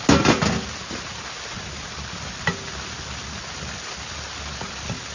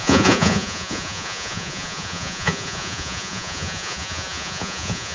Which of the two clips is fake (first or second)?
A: second